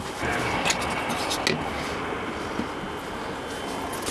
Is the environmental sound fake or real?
real